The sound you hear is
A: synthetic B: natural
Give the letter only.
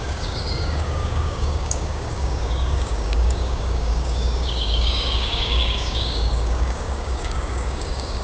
A